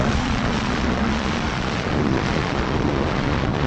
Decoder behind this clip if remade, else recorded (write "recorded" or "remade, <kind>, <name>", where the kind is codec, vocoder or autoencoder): remade, vocoder, Vocos